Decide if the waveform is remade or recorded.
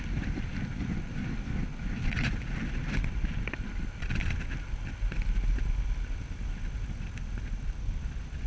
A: recorded